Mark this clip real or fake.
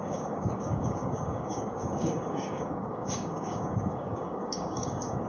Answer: fake